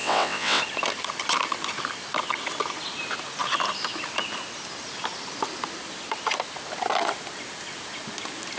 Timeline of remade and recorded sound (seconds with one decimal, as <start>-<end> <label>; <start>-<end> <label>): 0.0-0.6 remade; 0.6-8.6 recorded